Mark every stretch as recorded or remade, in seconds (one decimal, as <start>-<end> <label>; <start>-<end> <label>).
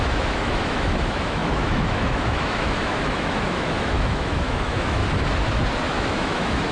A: 0.0-5.0 remade; 5.0-5.8 recorded; 5.8-6.7 remade